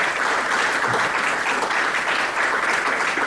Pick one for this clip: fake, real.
real